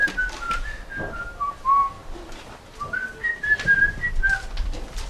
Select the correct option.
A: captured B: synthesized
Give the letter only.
A